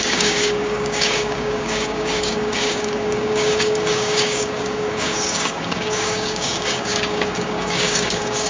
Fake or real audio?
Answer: fake